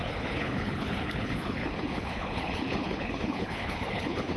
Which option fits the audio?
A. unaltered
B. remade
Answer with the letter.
B